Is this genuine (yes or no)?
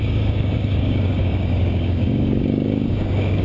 no